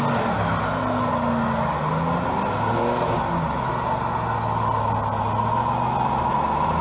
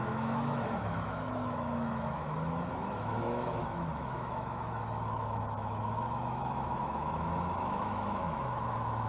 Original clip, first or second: first